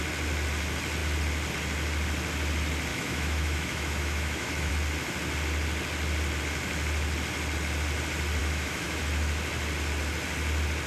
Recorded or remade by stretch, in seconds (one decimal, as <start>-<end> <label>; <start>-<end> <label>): 0.0-2.9 recorded; 2.9-4.7 remade; 4.7-8.4 recorded; 8.4-9.0 remade; 9.0-10.9 recorded